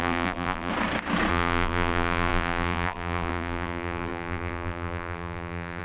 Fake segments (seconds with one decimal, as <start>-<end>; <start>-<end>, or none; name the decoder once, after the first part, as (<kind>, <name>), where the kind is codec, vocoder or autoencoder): 0.0-0.7 (vocoder, BigVGAN v2); 1.3-5.8